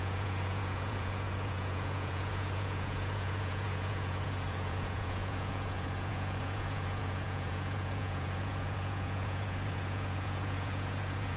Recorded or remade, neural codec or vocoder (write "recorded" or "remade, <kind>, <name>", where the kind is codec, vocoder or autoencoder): remade, vocoder, Vocos